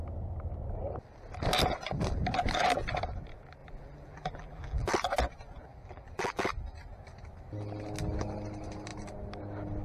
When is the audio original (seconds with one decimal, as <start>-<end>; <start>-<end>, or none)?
0.0-3.6; 4.9-5.7; 6.5-9.8